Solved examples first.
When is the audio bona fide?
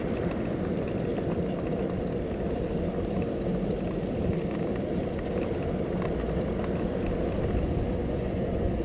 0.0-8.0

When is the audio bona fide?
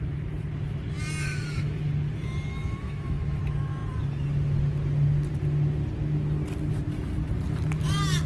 0.0-1.2; 1.9-2.5; 3.4-8.3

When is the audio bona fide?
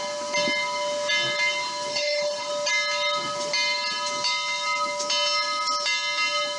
0.0-1.9; 2.5-6.6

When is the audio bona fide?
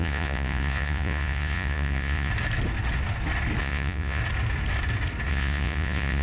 2.3-3.6; 4.2-5.3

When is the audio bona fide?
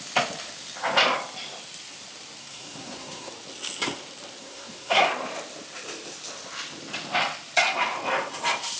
0.0-2.4; 3.3-4.4; 5.1-8.8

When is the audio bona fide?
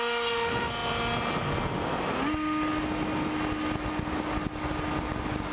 0.0-5.5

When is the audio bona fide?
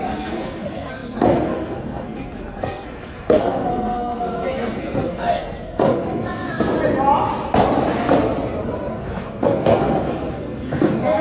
6.7-8.9